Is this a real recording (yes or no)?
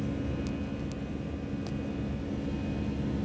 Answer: yes